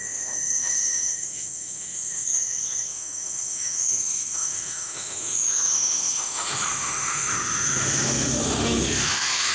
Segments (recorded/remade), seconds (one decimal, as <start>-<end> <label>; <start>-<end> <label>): 0.0-9.5 remade